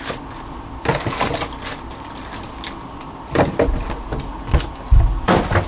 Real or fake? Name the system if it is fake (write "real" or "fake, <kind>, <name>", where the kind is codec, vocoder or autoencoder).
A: real